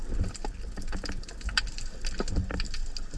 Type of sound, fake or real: real